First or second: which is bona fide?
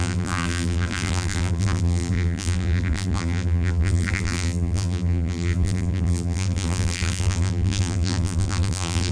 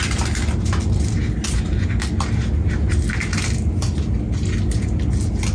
second